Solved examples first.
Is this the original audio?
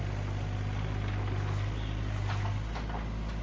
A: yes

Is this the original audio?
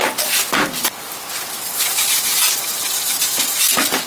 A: yes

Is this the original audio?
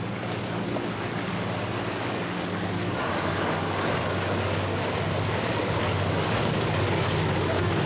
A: no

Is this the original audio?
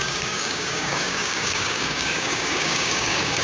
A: no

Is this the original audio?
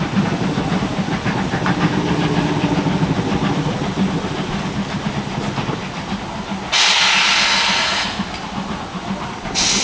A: yes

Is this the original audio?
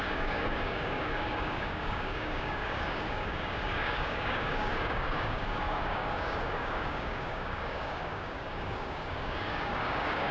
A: no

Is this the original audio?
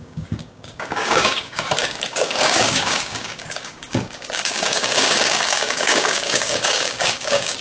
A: no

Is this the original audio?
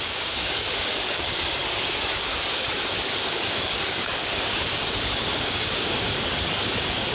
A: no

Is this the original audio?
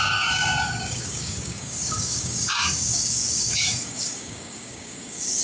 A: no